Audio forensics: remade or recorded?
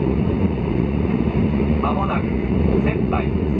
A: remade